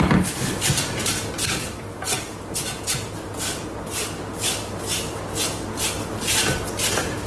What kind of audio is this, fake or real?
real